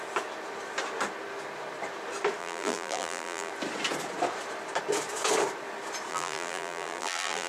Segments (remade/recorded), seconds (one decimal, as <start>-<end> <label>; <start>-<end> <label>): 0.0-2.4 recorded; 2.4-3.5 remade; 3.5-6.1 recorded; 6.1-7.5 remade